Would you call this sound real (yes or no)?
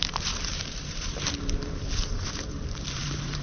no